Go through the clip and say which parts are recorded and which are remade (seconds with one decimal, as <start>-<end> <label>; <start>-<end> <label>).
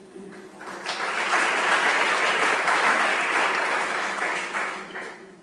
0.0-2.5 recorded; 2.5-3.1 remade; 3.1-3.7 recorded; 3.7-5.4 remade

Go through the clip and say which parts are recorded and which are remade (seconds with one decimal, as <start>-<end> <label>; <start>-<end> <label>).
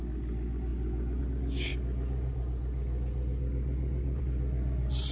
0.0-5.1 recorded